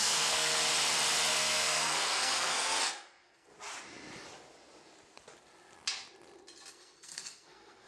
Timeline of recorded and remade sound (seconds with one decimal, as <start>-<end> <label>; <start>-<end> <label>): 0.0-0.5 remade; 0.5-1.3 recorded; 1.3-3.5 remade; 3.5-6.7 recorded; 6.7-7.9 remade